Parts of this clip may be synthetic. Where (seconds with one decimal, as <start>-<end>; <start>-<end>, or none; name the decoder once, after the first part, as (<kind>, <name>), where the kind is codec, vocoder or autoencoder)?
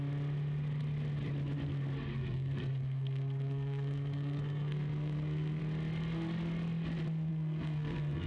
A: 2.1-5.6 (codec, SNAC); 7.3-8.3